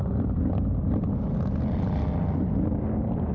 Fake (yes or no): no